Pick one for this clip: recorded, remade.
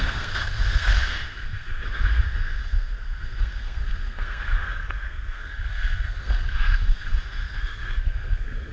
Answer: remade